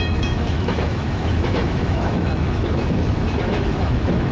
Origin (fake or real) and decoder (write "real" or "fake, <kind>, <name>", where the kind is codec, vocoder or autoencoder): fake, autoencoder, DAC-VAE